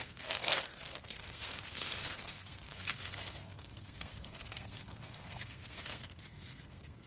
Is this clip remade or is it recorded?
remade